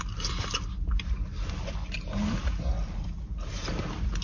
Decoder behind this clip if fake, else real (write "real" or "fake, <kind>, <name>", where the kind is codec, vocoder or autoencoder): real